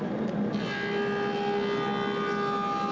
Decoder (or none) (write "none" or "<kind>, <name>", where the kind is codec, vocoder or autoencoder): none